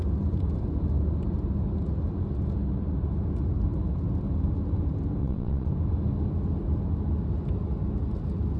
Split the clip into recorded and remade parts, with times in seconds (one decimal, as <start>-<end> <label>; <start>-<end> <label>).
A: 0.0-5.2 recorded; 5.2-5.7 remade; 5.7-8.6 recorded